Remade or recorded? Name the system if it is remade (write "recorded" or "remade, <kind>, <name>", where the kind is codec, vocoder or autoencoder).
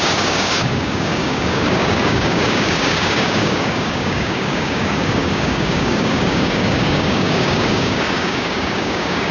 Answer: remade, codec, DAC